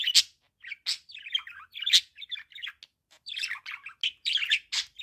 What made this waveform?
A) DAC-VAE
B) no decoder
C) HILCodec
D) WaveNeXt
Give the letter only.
B